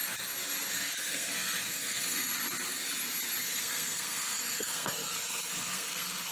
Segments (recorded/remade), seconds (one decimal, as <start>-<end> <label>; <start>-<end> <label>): 0.0-0.7 recorded; 0.7-2.3 remade; 2.3-3.4 recorded; 3.4-6.3 remade